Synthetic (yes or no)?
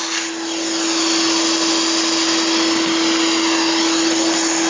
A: no